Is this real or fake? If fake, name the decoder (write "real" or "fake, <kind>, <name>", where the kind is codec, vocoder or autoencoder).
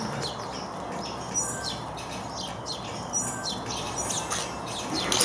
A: real